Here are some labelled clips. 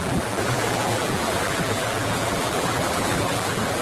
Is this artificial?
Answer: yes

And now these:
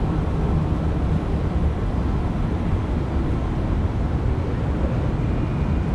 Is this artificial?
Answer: no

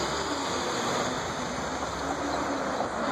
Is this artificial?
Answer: no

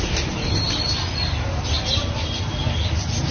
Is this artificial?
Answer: no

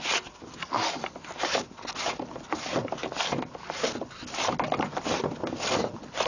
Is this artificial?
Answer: no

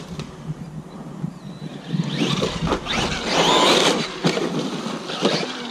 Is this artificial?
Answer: no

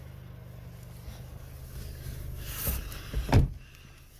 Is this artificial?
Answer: no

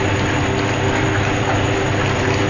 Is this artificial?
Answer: no